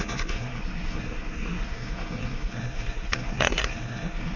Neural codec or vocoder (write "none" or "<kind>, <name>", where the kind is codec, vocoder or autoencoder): codec, SNAC